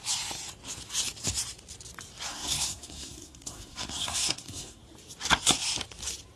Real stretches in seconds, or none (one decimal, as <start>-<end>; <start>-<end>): 0.0-2.3; 4.8-6.4

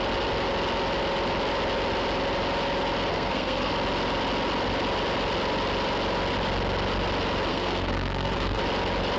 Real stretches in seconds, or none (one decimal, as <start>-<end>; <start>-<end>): 0.0-3.1; 3.7-7.5; 8.6-9.2

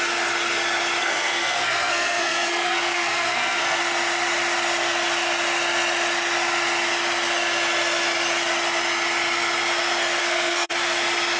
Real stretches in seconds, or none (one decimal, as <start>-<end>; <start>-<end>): 0.0-1.0; 3.8-10.2; 10.7-11.4

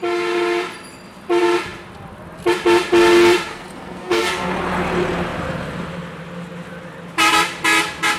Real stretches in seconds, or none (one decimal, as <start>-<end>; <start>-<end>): 0.0-3.5; 4.5-8.2

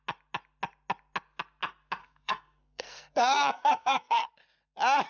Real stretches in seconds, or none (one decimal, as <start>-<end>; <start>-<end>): 0.0-2.0; 4.3-5.1